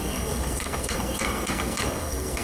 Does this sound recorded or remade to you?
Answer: remade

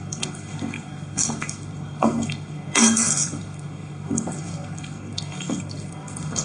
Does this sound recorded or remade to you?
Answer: remade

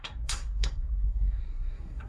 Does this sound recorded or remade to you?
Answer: remade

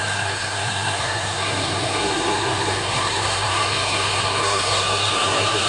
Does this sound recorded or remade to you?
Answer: remade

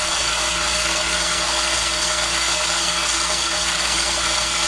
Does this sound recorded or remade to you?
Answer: remade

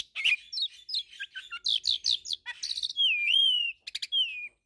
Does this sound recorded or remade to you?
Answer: recorded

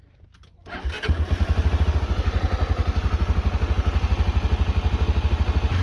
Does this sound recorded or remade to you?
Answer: recorded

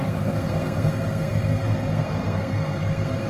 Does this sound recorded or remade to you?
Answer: remade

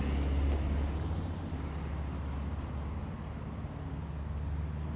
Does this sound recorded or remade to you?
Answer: recorded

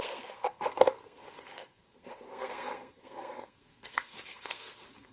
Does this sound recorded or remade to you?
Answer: remade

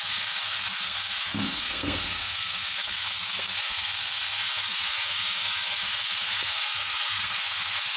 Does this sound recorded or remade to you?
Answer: remade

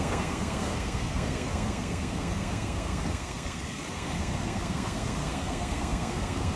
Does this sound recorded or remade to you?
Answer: remade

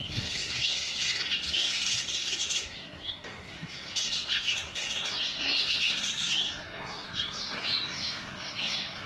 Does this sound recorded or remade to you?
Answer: remade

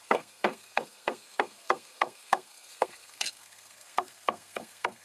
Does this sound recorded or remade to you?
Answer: remade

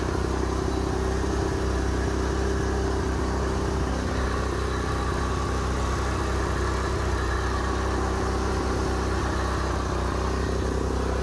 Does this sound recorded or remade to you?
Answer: recorded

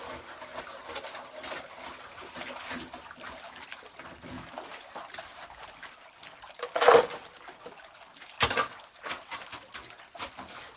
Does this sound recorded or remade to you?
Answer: recorded